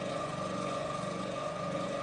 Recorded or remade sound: remade